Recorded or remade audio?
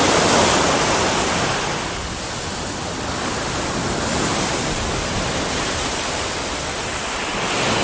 recorded